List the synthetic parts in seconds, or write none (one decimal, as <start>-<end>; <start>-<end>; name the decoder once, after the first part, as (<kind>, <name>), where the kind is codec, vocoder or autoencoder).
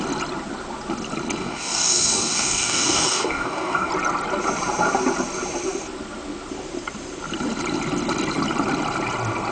1.4-3.9 (codec, DAC)